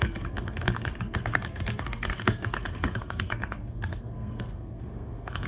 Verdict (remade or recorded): remade